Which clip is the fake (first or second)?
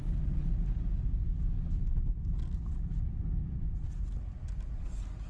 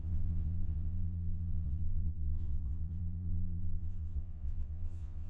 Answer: second